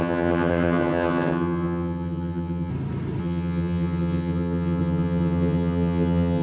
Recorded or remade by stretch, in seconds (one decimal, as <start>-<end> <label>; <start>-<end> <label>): 0.0-2.7 remade; 2.7-3.2 recorded; 3.2-6.4 remade